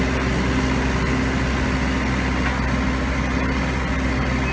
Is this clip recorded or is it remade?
recorded